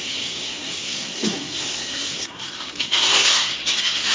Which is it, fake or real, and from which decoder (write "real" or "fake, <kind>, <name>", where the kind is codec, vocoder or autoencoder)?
fake, codec, SNAC